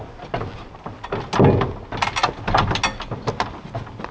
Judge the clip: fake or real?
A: real